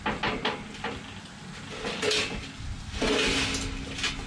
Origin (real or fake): real